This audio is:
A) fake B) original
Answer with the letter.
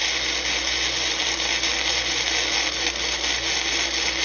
B